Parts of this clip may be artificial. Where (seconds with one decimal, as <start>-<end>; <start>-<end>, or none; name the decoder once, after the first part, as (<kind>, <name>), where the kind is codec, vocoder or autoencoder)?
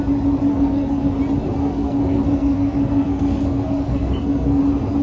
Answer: 0.5-1.2 (codec, SNAC); 1.6-4.6